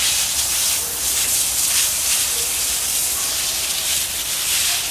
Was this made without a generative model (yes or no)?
yes